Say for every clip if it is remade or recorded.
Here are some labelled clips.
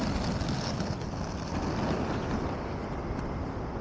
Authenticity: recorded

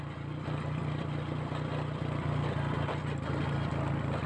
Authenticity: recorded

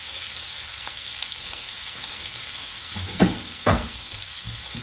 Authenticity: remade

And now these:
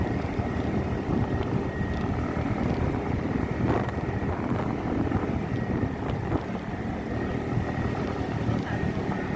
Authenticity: recorded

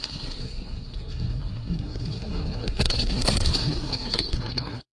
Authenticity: remade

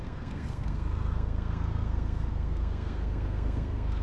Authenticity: remade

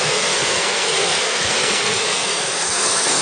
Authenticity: remade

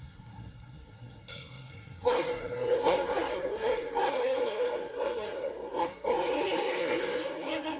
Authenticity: remade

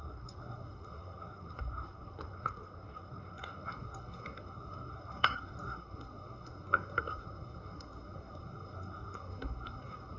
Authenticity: remade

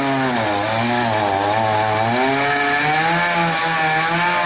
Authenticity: recorded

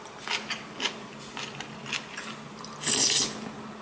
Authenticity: recorded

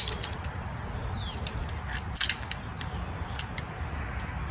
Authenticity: recorded